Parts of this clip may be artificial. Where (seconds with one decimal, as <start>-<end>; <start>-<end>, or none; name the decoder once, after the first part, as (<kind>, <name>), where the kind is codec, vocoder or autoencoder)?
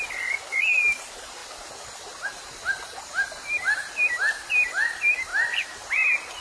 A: none